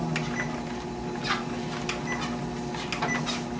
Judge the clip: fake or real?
real